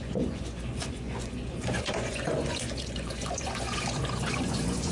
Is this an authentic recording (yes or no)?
no